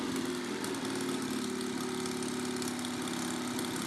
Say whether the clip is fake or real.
real